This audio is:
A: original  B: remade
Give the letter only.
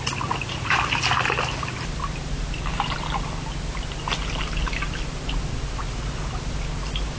A